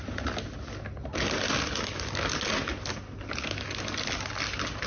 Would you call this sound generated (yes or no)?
no